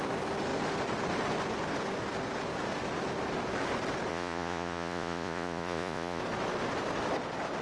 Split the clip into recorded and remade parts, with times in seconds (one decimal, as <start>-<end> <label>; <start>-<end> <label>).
0.0-4.1 recorded; 4.1-6.2 remade; 6.2-7.6 recorded